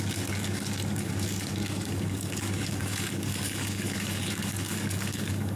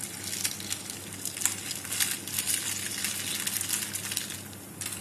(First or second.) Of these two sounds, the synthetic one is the first